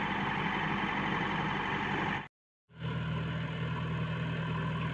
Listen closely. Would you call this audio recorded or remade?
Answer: recorded